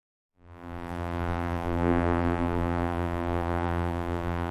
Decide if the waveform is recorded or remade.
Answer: remade